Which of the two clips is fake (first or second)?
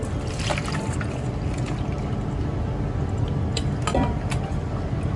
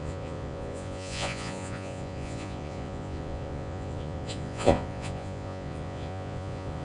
second